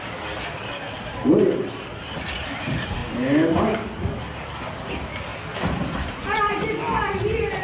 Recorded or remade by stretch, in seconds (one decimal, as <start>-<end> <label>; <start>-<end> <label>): 0.0-7.6 recorded